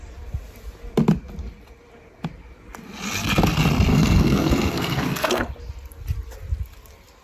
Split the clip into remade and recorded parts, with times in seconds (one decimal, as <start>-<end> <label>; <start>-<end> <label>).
0.0-3.9 recorded; 3.9-5.5 remade; 5.5-7.2 recorded